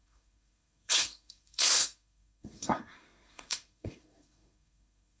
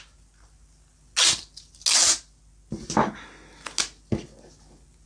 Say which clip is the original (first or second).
second